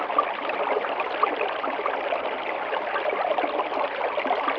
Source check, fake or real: real